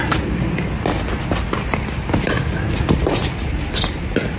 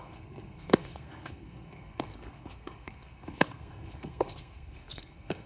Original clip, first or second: first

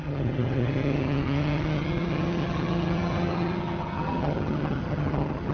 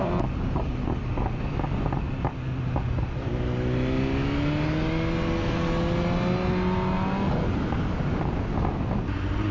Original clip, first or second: second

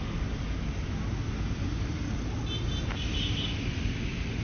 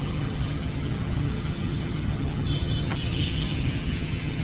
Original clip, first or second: first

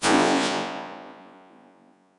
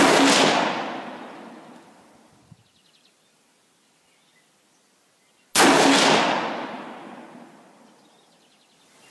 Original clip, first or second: second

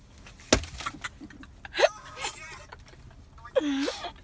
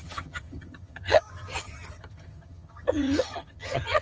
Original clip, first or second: first